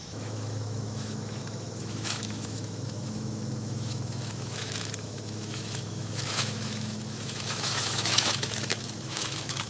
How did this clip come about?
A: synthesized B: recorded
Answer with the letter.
A